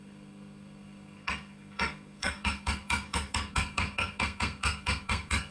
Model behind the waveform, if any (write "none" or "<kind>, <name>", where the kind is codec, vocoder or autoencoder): codec, SNAC